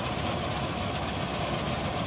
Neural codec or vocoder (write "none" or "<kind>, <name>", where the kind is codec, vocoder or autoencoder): none